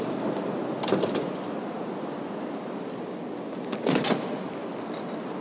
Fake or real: real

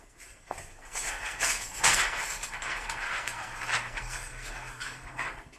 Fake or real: fake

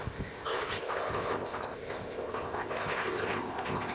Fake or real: fake